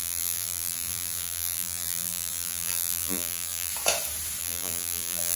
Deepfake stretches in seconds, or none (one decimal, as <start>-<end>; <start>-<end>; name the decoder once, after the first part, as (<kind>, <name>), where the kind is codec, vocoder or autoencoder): 0.0-3.7 (vocoder, BigVGAN v2); 4.4-5.4